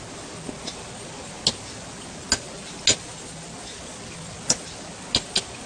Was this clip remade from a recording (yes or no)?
no